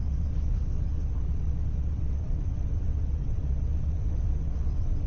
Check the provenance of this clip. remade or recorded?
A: remade